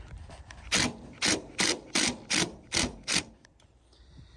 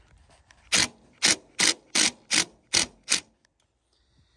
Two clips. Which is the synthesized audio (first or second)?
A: first